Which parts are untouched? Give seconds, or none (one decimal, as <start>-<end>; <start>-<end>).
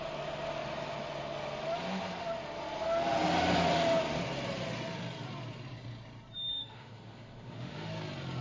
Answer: 0.0-6.5; 7.9-8.4